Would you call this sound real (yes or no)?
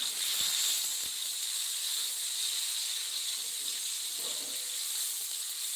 yes